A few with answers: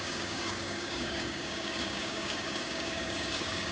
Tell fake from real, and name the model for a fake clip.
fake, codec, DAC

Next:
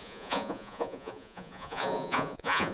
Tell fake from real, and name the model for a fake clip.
fake, vocoder, Vocos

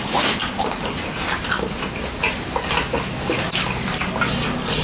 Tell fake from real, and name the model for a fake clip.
real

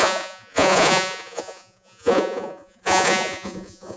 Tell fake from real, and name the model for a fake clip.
fake, vocoder, Vocos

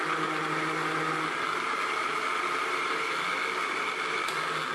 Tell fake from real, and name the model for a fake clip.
real